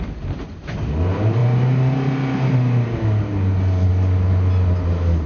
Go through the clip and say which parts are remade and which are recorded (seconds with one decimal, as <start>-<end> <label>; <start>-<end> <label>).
0.0-5.3 recorded